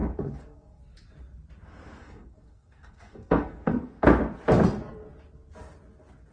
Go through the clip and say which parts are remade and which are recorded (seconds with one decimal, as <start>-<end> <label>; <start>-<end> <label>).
0.0-0.8 remade; 0.8-2.0 recorded; 2.0-4.2 remade; 4.2-6.3 recorded